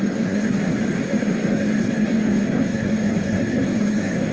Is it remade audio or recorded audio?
remade